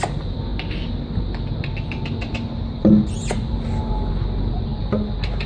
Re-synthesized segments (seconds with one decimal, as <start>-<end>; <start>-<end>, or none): 4.7-5.5